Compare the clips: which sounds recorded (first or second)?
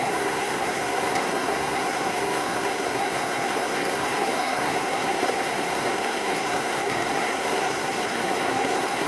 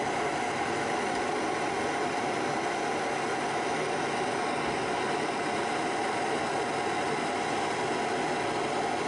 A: second